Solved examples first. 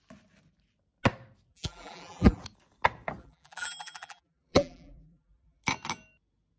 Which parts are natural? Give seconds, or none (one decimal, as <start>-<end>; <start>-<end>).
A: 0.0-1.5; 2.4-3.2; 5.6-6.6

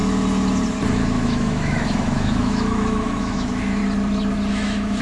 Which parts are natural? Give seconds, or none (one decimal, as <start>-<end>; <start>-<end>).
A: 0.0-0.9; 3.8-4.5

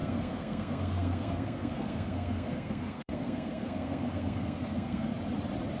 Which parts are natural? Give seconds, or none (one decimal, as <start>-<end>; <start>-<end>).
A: 5.1-5.8